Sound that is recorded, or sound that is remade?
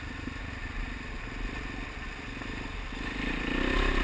recorded